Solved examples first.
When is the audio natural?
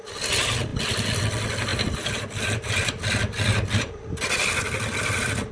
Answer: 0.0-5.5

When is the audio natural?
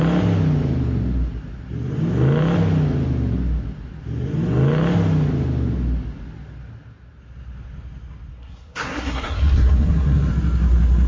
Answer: 0.0-8.3; 10.3-11.1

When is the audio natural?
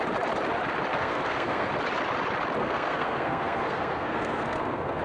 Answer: 0.0-0.9; 1.7-2.6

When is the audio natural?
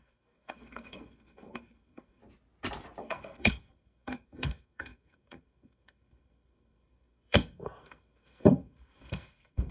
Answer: 2.2-3.0